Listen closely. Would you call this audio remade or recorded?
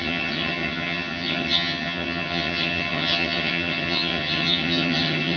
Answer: remade